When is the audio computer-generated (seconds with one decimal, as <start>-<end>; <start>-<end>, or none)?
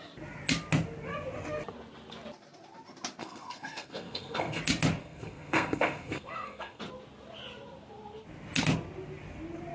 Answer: 3.2-4.6; 5.0-6.8